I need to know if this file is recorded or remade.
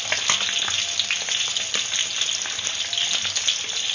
recorded